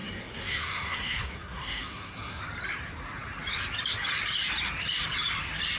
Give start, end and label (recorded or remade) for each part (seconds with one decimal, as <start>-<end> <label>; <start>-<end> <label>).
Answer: 0.0-2.4 remade; 2.4-5.8 recorded